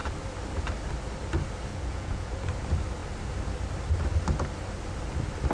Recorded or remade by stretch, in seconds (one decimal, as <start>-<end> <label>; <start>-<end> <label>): 0.0-1.7 recorded; 1.7-2.5 remade; 2.5-5.5 recorded